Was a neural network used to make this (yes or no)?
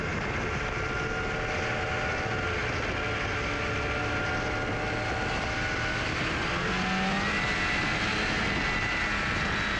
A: no